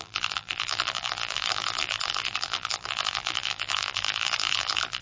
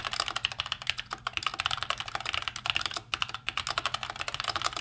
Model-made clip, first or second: first